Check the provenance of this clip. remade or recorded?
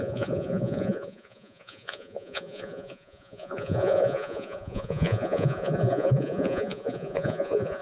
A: remade